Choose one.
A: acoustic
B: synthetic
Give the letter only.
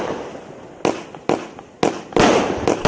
A